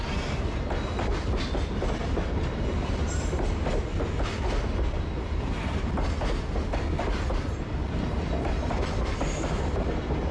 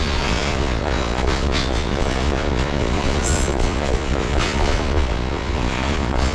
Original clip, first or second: first